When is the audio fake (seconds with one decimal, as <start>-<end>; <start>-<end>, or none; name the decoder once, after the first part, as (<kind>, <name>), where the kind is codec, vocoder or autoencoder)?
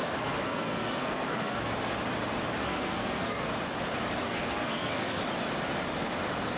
0.0-1.7 (codec, SNAC); 2.6-3.5; 4.2-5.2